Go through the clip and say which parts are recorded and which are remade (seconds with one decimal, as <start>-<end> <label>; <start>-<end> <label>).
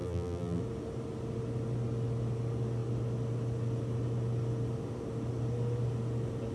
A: 0.0-0.6 remade; 0.6-6.5 recorded